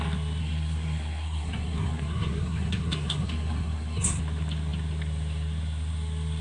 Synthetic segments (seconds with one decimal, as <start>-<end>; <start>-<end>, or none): 0.4-4.2